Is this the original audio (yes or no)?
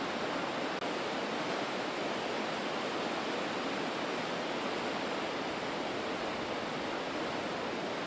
yes